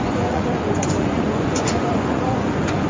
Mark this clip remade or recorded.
remade